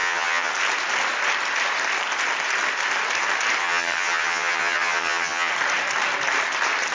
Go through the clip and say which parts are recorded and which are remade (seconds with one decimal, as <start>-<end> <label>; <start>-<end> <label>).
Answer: 0.0-0.5 remade; 0.5-3.6 recorded; 3.6-5.5 remade; 5.5-6.9 recorded